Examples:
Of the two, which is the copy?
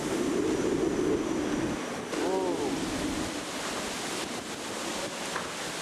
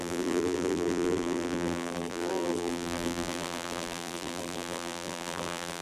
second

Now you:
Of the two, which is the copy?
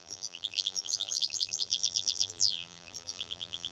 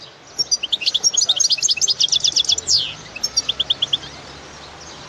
first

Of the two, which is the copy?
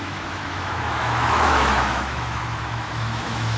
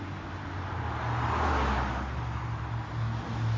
first